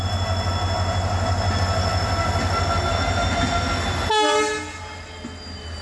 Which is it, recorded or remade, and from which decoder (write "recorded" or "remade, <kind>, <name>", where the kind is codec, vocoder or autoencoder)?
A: recorded